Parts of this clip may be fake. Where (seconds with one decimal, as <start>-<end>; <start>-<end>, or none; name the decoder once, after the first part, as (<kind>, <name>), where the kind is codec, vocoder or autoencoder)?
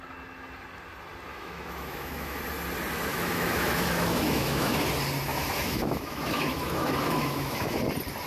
1.3-2.4 (autoencoder, DAC-VAE); 3.1-4.8; 5.3-7.8